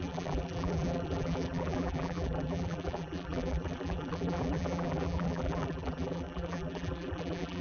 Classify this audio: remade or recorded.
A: remade